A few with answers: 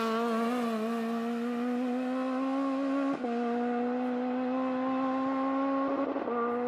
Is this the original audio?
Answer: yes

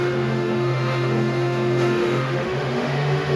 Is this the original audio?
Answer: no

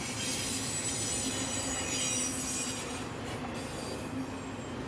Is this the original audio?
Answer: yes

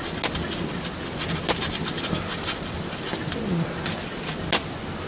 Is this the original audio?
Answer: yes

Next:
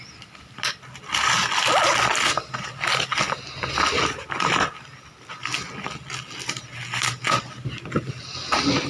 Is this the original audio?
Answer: yes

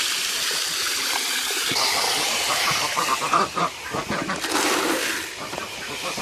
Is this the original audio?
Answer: no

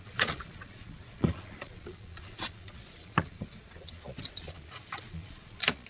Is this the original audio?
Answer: no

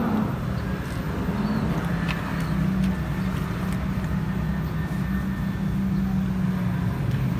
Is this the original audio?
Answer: yes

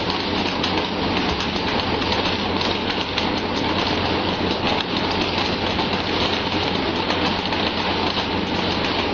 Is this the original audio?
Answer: yes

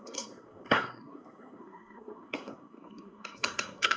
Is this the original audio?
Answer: no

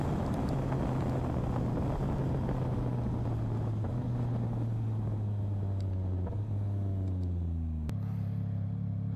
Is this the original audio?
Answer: yes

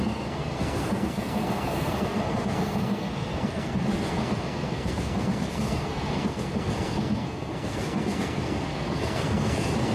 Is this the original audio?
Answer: no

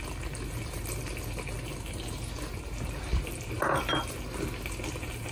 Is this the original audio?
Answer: yes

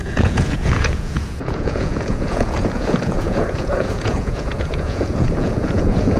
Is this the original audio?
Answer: no